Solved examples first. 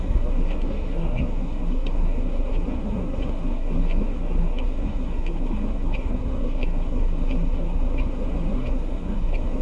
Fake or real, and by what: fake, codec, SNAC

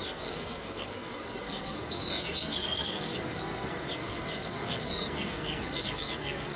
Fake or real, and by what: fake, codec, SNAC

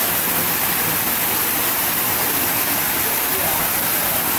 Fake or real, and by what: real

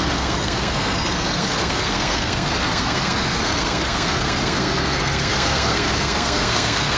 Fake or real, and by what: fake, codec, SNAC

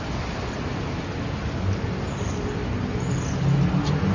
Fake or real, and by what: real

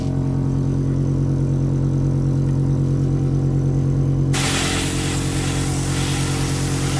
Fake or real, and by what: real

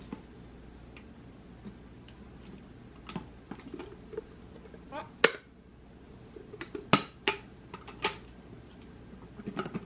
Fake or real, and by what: real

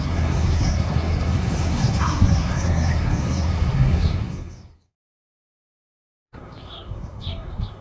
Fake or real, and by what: fake, codec, SNAC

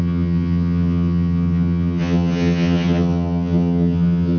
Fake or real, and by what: fake, vocoder, HiFi-GAN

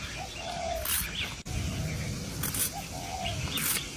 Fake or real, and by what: real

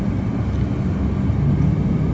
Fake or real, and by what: real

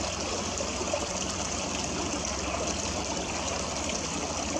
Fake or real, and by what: real